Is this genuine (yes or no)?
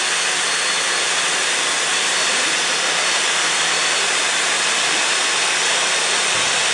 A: no